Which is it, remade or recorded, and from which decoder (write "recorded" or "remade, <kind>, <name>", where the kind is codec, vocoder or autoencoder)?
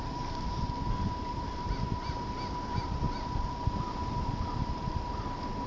recorded